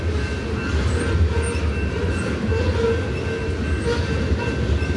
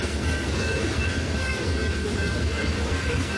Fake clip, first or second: second